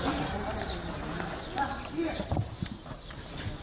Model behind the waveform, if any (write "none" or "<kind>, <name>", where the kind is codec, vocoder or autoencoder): vocoder, BigVGAN v2